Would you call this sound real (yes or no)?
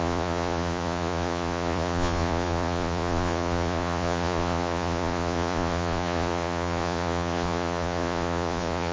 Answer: no